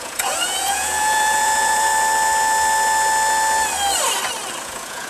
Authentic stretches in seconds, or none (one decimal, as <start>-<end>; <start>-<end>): 1.9-4.6